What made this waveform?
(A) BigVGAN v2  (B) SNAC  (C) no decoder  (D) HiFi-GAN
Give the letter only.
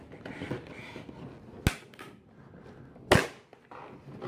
C